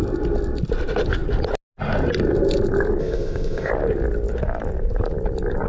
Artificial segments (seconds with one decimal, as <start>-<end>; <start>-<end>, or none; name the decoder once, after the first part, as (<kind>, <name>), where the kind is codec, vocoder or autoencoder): 3.0-3.7 (codec, ZipCodec)